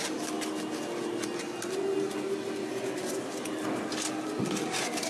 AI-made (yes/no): no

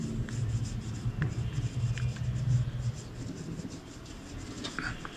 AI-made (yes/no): no